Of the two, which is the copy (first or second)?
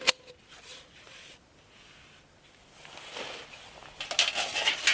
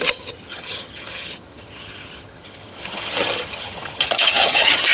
second